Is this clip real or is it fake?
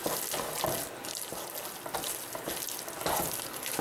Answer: real